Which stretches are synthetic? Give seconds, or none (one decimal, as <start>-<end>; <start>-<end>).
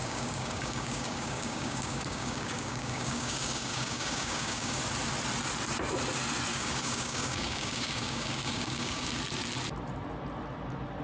0.0-4.8; 6.5-9.2